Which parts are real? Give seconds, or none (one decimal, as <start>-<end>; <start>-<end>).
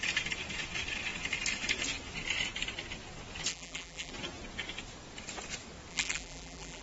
0.0-3.5; 4.1-5.9